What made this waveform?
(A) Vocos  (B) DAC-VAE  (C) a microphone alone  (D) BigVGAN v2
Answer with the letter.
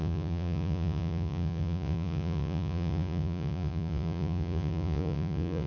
A